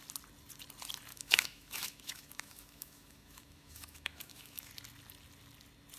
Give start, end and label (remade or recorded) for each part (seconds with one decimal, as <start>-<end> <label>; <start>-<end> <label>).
0.0-1.1 recorded; 1.1-4.7 remade; 4.7-6.0 recorded